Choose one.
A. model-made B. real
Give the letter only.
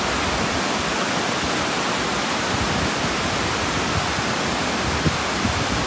B